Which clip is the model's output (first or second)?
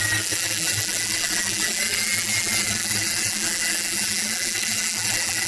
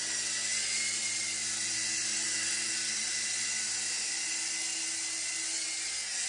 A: first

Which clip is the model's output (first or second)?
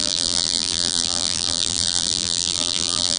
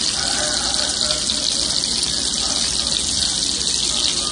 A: first